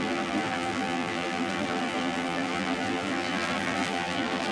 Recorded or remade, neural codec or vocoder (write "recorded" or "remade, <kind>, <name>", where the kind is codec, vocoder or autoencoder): remade, vocoder, BigVGAN v2